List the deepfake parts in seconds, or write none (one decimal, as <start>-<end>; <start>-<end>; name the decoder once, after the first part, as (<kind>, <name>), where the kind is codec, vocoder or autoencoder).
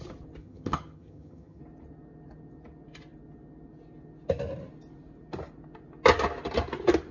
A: 0.4-1.6 (vocoder, HiFi-GAN)